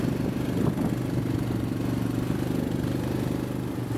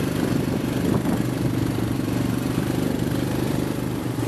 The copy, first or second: second